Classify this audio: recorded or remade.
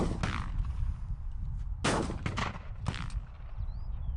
recorded